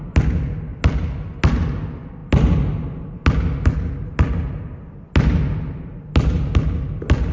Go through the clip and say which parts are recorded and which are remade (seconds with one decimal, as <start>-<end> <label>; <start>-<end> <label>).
0.0-7.3 recorded